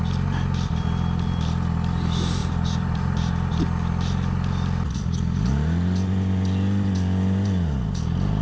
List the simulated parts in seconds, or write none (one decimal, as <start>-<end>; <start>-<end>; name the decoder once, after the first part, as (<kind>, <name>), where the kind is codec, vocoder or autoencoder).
2.4-3.3 (vocoder, BigVGAN v2)